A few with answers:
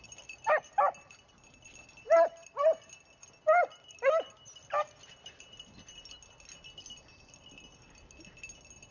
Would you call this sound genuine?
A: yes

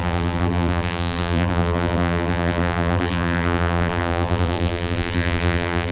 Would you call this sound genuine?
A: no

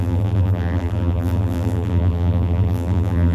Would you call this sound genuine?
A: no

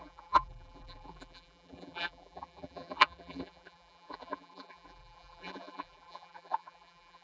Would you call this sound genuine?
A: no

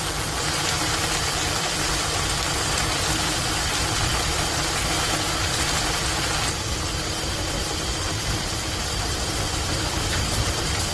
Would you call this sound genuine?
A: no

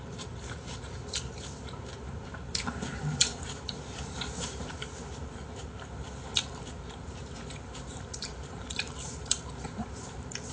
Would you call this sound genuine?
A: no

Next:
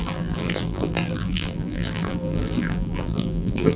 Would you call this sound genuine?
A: no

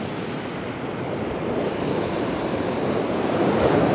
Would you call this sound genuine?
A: no